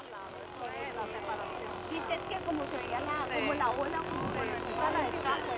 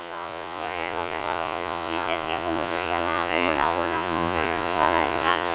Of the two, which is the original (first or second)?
first